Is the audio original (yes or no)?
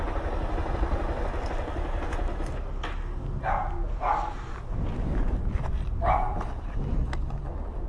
yes